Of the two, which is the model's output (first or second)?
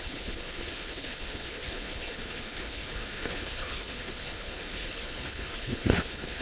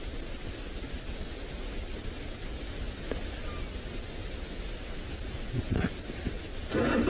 first